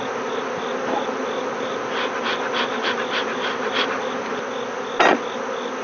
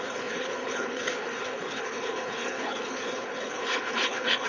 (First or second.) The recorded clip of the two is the first